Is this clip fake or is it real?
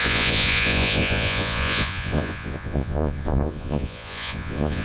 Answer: fake